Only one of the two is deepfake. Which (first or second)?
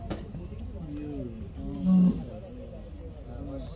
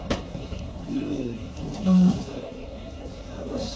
second